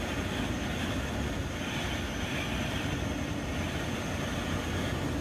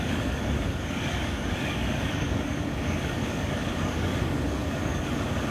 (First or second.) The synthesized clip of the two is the second